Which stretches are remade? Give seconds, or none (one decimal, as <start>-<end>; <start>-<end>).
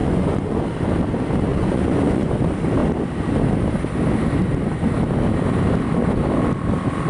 0.0-0.6; 1.5-2.3